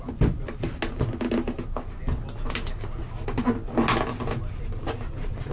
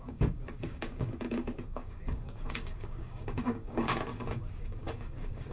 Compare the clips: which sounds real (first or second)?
first